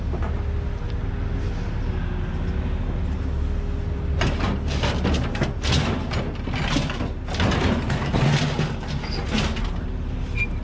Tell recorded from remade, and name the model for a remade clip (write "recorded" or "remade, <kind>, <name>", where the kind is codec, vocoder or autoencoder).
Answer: recorded